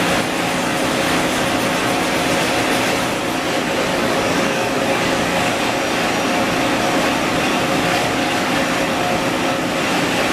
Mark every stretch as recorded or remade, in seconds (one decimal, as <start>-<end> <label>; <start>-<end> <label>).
0.0-3.9 recorded; 3.9-5.6 remade; 5.6-7.9 recorded; 7.9-8.5 remade; 8.5-10.3 recorded